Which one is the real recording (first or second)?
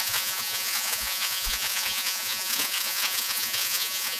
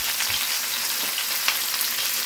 second